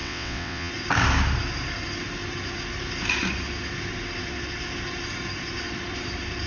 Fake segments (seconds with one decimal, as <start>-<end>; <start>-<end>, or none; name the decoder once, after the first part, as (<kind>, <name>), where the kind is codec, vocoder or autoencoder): 0.0-0.7 (vocoder, WaveNeXt)